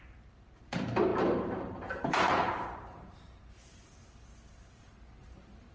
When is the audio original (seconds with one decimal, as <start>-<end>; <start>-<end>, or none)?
none

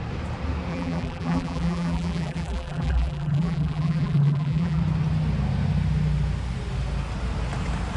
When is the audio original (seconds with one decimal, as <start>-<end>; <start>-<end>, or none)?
0.0-0.7; 4.8-8.0